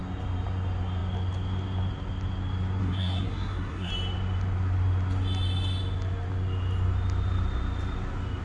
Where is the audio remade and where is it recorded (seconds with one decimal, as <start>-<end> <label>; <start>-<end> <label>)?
0.0-2.8 recorded; 2.8-3.9 remade; 3.9-8.4 recorded